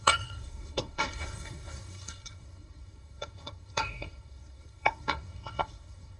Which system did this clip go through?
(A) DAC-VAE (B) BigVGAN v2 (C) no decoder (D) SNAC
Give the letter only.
D